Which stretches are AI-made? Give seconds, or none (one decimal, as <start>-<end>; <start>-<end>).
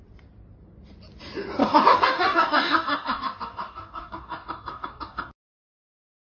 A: 1.6-5.3